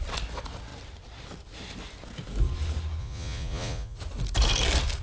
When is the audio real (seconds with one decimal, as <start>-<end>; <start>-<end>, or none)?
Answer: 0.0-3.0; 4.0-5.0